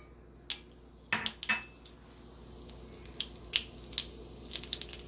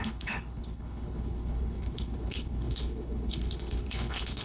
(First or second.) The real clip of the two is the first